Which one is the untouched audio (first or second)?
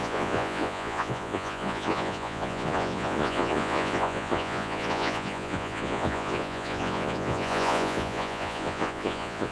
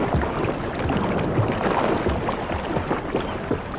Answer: second